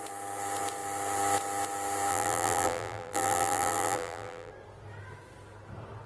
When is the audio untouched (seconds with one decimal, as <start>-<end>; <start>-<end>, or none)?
0.0-2.1; 4.5-6.1